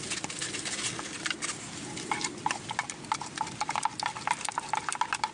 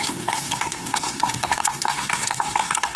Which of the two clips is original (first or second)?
first